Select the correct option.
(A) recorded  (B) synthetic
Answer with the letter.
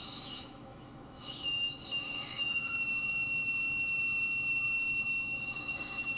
B